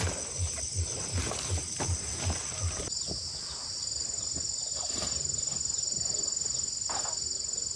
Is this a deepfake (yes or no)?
no